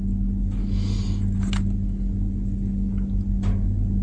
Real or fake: real